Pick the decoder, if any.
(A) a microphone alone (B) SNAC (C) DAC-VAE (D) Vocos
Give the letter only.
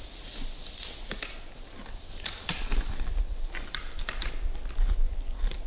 A